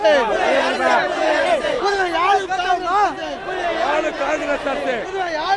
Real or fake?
real